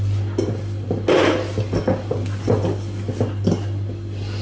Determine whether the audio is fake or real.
real